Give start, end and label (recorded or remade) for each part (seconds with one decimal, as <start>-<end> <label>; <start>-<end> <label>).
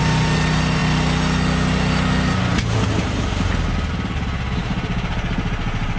0.0-6.0 recorded